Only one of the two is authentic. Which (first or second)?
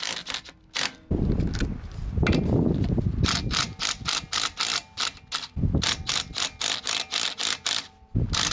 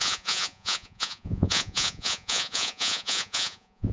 first